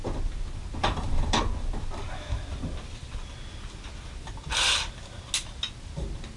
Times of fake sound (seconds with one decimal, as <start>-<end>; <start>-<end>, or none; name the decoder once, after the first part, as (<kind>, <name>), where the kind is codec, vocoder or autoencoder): 0.8-1.4 (vocoder, BigVGAN v2)